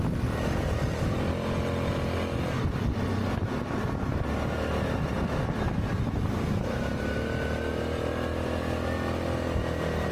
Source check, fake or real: real